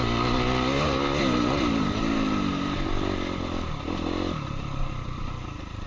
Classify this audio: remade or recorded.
recorded